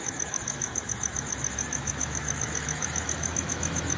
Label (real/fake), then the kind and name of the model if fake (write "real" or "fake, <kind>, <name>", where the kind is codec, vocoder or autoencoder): fake, autoencoder, DAC-VAE